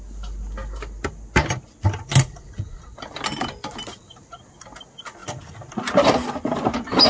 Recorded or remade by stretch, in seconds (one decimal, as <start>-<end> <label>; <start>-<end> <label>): 0.0-7.1 recorded